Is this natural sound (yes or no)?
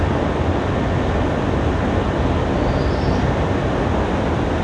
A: yes